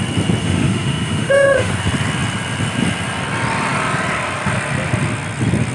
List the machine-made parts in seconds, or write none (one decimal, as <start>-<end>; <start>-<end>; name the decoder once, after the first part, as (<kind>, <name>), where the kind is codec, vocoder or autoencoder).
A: 0.4-1.7 (autoencoder, DAC-VAE)